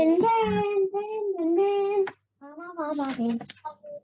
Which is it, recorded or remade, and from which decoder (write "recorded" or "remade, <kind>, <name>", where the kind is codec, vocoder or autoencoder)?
recorded